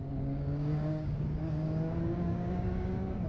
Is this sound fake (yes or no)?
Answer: yes